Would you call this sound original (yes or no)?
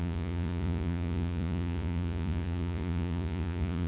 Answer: no